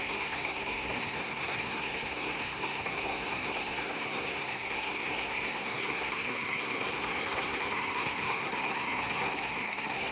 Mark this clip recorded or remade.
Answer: remade